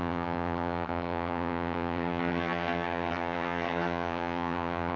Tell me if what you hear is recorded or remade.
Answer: remade